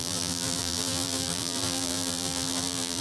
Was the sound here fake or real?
fake